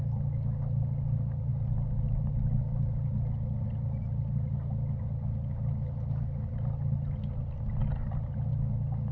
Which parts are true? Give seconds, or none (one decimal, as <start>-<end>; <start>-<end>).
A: 0.0-9.1

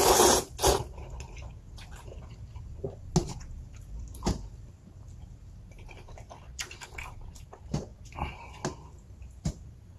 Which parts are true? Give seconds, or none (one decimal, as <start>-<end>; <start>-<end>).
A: 0.0-10.0

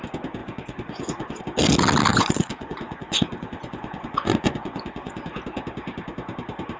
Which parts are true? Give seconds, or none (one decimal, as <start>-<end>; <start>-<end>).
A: 0.0-0.4; 1.4-2.1; 5.2-6.8